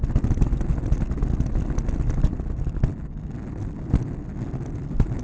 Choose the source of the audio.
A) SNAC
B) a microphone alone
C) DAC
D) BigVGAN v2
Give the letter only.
B